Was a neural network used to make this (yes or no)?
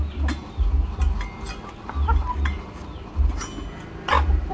no